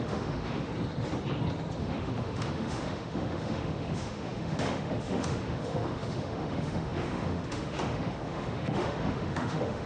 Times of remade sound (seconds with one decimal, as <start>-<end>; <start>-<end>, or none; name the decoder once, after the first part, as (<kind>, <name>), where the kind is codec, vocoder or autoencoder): 0.0-0.7 (autoencoder, DAC-VAE); 1.8-9.9